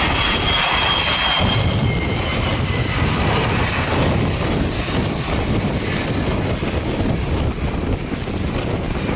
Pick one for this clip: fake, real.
real